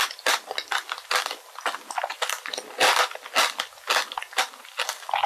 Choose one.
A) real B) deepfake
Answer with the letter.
A